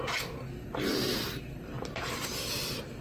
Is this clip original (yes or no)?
yes